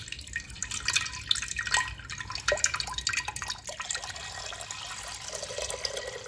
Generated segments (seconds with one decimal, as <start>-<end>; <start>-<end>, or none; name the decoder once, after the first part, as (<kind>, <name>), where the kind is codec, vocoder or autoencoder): none